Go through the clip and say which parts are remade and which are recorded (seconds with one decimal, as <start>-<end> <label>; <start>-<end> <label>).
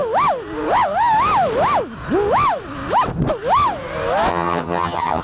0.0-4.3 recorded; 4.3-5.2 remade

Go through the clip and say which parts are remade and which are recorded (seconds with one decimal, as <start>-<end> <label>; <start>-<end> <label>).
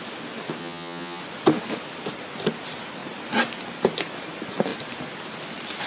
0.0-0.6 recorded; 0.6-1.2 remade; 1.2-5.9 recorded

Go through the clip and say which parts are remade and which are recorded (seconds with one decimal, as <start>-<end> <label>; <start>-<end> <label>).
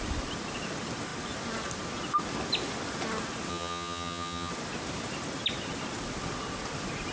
0.0-3.5 recorded; 3.5-4.5 remade; 4.5-7.1 recorded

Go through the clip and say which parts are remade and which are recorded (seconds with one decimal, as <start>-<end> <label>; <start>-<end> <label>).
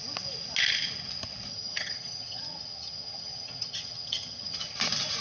0.0-1.5 recorded; 1.5-4.6 remade; 4.6-5.2 recorded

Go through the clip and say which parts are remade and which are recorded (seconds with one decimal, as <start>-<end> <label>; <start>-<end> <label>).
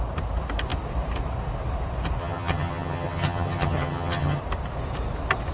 0.0-2.2 recorded; 2.2-4.4 remade; 4.4-5.5 recorded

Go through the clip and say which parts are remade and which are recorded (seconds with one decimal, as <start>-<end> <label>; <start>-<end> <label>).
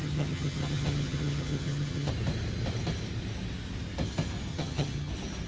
0.0-2.1 remade; 2.1-4.5 recorded; 4.5-5.1 remade; 5.1-5.5 recorded